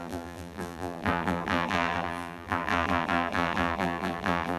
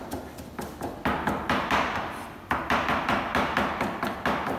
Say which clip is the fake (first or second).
first